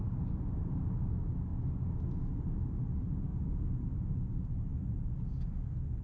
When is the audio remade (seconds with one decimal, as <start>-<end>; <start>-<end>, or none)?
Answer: 0.0-1.5; 2.3-3.3; 4.1-4.7